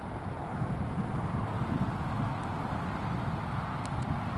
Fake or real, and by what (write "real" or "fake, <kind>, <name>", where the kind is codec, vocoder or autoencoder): real